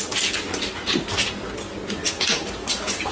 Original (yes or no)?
yes